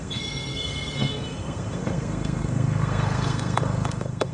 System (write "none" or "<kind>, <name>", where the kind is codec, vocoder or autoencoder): codec, SNAC